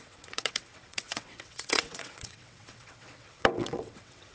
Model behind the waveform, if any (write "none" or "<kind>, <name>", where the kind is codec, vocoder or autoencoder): vocoder, WaveNeXt